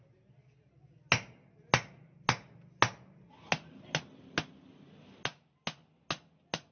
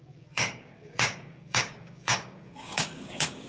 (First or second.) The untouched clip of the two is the first